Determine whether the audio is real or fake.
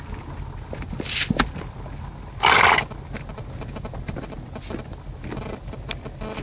real